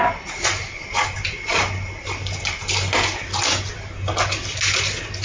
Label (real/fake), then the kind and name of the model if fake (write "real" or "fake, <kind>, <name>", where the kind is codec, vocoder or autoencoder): real